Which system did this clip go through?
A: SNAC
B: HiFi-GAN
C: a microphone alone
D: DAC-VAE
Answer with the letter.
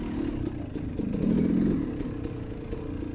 C